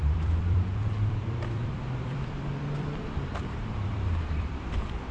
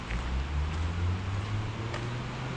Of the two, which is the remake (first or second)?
first